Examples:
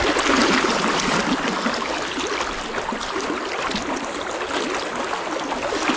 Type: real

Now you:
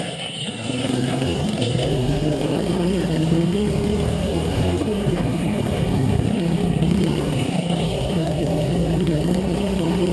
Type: fake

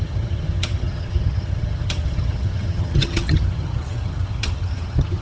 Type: fake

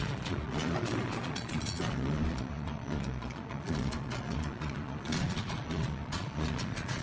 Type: fake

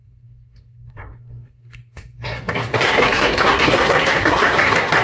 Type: fake